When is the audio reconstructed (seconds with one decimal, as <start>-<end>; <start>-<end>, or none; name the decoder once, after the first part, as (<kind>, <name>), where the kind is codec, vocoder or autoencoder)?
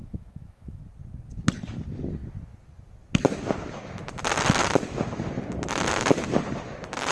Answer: 0.0-0.8 (autoencoder, DAC-VAE)